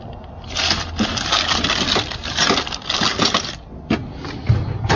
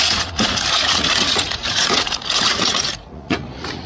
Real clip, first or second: first